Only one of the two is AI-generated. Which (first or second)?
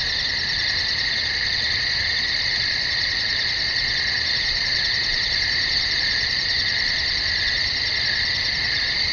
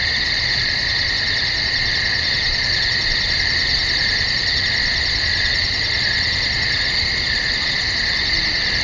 first